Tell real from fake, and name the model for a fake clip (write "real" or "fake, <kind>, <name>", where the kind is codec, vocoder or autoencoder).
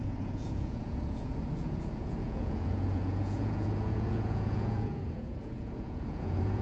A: fake, vocoder, Vocos